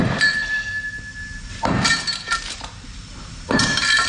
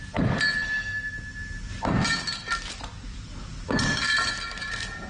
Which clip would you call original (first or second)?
second